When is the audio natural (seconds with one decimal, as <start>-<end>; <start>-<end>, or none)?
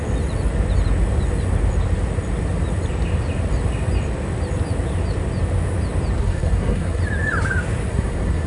0.0-6.2; 7.0-7.9